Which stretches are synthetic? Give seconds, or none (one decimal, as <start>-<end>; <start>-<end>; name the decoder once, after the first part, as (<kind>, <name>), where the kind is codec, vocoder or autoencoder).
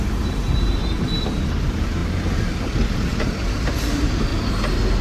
0.0-0.8 (vocoder, BigVGAN v2); 1.5-4.3